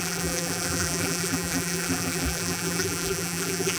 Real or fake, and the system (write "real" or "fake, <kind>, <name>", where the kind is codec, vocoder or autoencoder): fake, vocoder, BigVGAN v2